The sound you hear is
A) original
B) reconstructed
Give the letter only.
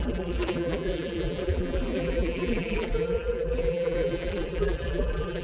B